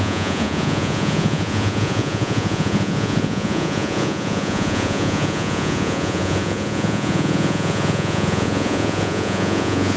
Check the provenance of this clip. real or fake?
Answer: fake